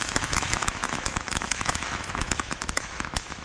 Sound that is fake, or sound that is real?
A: fake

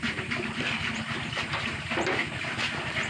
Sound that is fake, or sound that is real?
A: real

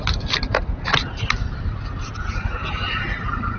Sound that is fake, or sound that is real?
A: real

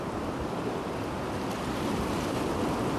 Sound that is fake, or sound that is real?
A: real